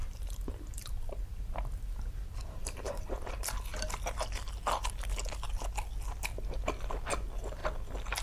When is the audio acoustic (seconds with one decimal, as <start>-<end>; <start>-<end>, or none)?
3.3-8.2